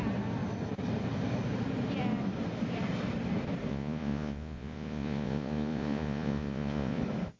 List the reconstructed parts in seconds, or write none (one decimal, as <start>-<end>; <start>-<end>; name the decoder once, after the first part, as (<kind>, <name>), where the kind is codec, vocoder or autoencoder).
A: 3.7-7.0 (vocoder, Vocos)